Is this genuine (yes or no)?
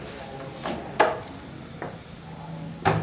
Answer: yes